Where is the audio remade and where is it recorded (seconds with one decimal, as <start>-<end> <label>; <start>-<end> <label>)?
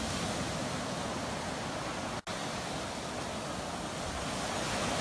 0.0-5.0 recorded